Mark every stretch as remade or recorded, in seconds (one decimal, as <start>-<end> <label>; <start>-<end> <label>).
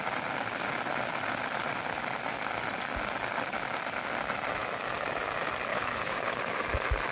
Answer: 0.0-5.7 recorded; 5.7-6.4 remade; 6.4-7.1 recorded